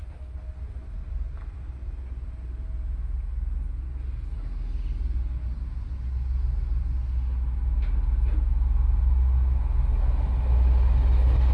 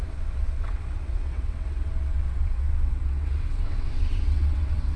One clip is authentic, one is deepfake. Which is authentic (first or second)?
first